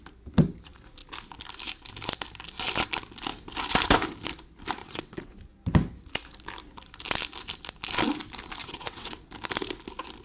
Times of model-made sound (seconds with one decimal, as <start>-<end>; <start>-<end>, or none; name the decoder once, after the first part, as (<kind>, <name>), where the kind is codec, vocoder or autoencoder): 4.8-5.3 (vocoder, WaveNeXt); 8.6-9.2